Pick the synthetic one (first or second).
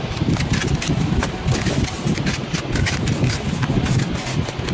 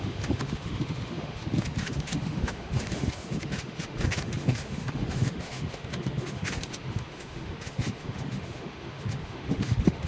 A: second